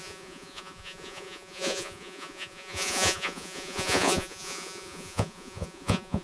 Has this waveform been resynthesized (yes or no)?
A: yes